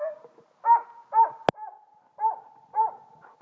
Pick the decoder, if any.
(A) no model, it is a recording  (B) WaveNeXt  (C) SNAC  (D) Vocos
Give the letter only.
A